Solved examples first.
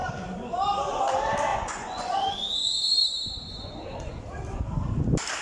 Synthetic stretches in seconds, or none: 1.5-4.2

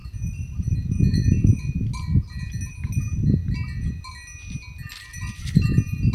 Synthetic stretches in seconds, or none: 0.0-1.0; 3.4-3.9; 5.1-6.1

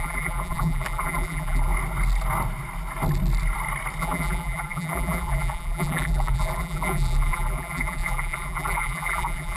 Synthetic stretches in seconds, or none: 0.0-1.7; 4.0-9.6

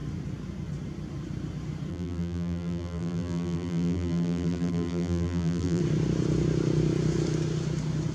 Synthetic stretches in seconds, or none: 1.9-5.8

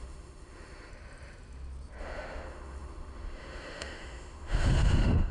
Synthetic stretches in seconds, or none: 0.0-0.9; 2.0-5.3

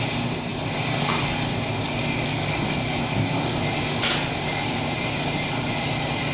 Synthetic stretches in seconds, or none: none